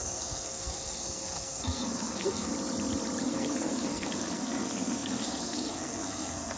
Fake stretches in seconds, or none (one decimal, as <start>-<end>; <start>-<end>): 0.0-2.5; 3.2-6.6